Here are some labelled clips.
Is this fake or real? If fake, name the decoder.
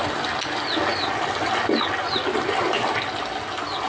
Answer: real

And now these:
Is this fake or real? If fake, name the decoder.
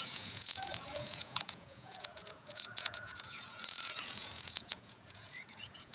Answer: fake, vocoder, Vocos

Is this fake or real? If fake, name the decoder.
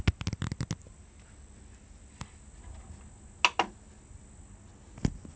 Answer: real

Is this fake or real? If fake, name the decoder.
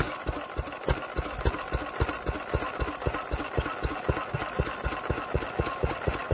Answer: real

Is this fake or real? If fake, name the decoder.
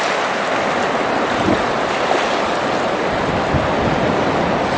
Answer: real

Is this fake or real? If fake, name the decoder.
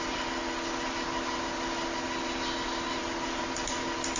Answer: real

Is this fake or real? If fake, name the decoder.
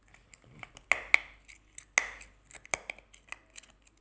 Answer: real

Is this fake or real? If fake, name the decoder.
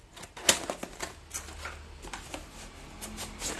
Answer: real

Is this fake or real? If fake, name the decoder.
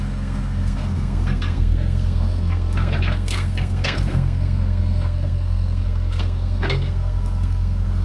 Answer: fake, codec, SNAC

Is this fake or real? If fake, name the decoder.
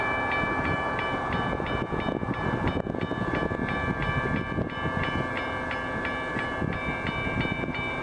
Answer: real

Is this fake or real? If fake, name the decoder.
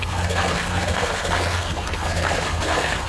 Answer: fake, codec, SNAC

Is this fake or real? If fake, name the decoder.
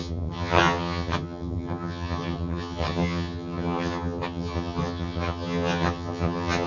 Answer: fake, vocoder, HiFi-GAN